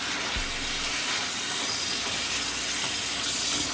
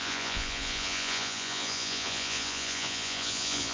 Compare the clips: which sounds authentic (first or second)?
first